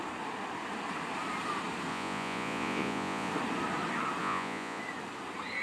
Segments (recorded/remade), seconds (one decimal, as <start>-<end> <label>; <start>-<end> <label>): 0.0-1.9 recorded; 1.9-3.3 remade; 3.3-4.2 recorded; 4.2-4.8 remade; 4.8-5.6 recorded